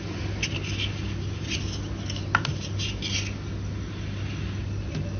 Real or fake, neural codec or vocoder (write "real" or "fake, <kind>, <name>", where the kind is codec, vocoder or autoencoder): real